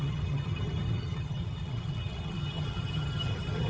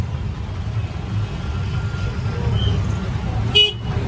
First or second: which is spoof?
first